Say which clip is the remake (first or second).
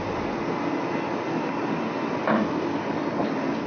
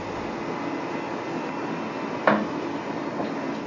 first